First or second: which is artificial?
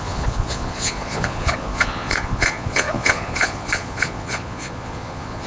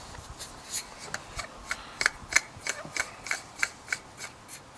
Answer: first